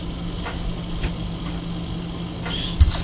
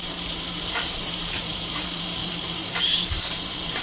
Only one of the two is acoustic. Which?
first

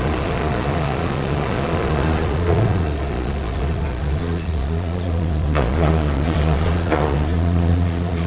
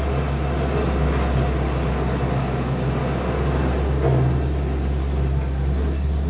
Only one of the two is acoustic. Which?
second